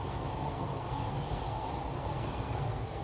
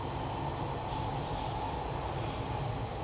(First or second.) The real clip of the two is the second